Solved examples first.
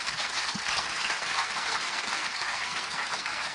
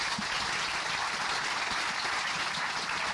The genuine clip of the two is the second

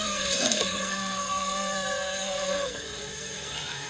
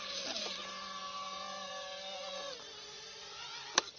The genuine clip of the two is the second